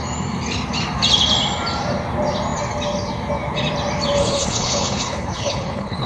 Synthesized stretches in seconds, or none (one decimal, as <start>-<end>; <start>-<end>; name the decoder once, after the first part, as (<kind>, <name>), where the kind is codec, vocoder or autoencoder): 4.2-6.1 (codec, HILCodec)